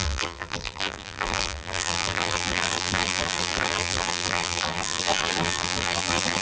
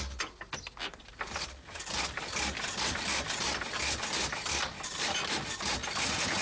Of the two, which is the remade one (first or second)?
first